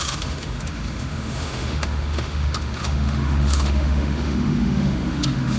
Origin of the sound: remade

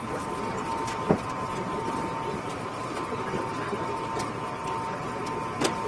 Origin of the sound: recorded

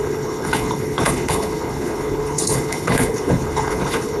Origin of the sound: remade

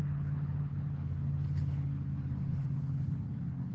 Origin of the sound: remade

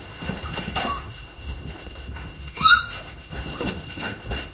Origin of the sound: remade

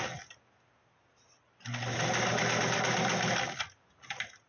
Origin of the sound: recorded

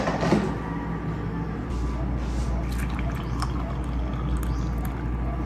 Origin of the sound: recorded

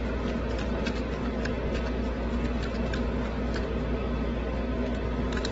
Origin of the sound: recorded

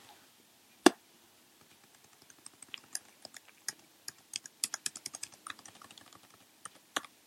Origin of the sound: recorded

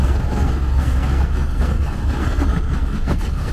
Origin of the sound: remade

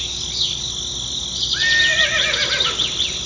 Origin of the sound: recorded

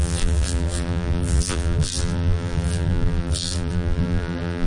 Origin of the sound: remade